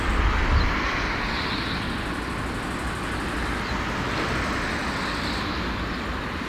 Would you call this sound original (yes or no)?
yes